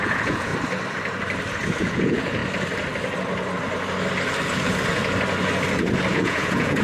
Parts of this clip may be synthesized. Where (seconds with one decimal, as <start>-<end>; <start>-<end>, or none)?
0.0-0.5; 1.8-2.4; 6.1-6.8